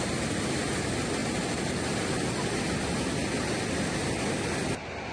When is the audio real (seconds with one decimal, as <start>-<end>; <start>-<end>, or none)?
0.0-5.1